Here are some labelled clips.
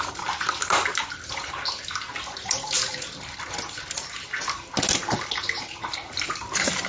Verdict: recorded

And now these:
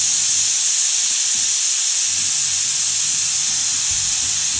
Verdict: recorded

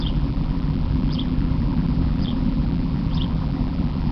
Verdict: remade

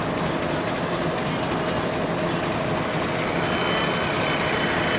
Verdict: recorded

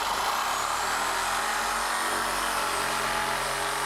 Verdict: recorded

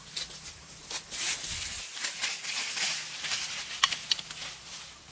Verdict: recorded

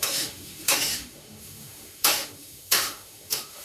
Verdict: remade